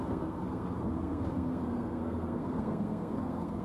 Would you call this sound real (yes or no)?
no